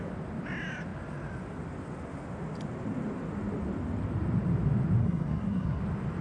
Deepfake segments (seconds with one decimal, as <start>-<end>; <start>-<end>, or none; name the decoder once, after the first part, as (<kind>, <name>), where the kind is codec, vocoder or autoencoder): 5.0-5.8 (codec, SNAC)